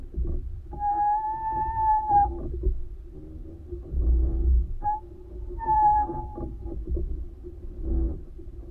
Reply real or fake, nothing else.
fake